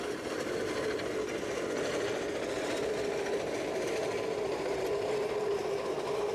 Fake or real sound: real